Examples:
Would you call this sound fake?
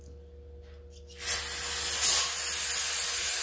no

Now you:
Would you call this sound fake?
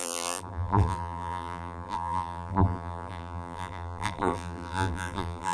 yes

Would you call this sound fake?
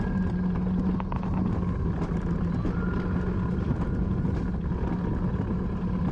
no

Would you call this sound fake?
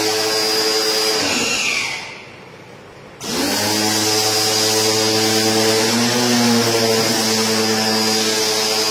no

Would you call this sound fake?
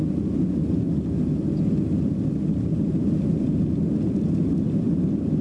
no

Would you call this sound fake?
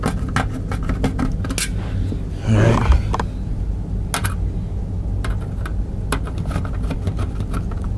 no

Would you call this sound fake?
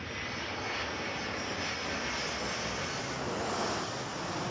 no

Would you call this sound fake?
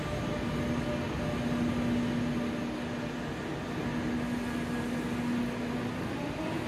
no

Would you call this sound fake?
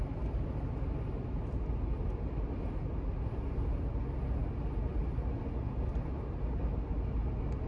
no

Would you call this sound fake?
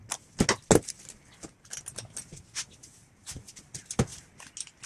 no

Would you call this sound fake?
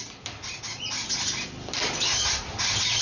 no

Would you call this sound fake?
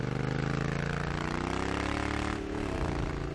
no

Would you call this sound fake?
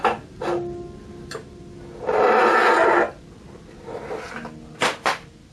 no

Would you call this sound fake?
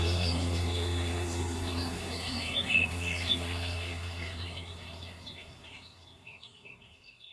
yes